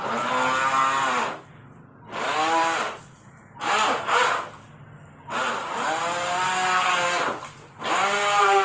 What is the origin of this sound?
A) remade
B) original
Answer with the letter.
B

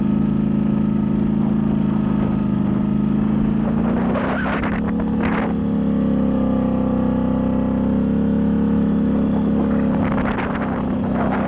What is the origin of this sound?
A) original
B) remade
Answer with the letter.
A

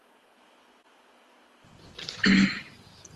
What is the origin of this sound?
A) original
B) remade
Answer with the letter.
A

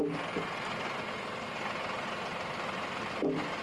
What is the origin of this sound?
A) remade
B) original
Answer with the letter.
B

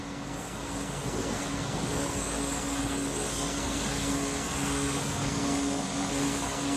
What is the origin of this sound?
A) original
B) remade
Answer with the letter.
B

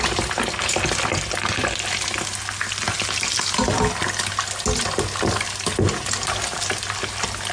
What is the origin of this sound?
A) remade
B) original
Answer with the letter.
B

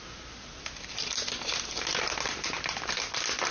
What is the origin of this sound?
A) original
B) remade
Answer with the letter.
A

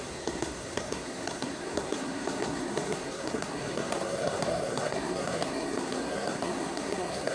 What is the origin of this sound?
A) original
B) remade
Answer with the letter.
B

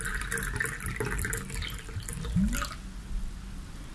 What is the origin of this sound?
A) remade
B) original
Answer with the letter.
B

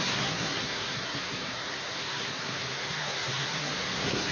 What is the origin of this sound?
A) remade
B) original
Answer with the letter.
A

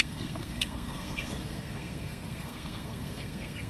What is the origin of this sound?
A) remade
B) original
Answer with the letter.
A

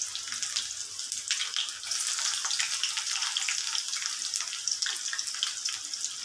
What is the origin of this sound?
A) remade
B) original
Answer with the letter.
B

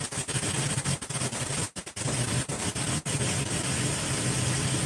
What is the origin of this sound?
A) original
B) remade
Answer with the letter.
A